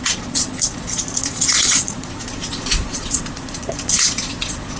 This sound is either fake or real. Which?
fake